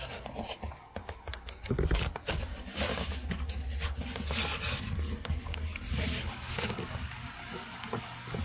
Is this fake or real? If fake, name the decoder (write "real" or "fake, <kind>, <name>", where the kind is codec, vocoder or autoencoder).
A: fake, codec, DAC